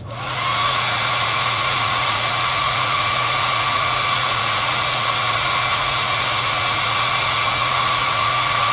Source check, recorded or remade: remade